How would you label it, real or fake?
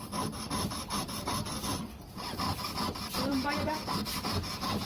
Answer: fake